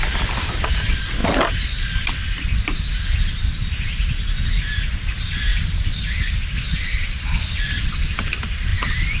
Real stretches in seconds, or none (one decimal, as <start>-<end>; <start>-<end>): 0.0-9.2